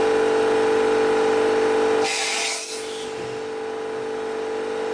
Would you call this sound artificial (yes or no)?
no